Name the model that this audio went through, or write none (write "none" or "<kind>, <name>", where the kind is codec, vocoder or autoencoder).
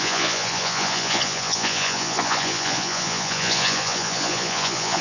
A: vocoder, Vocos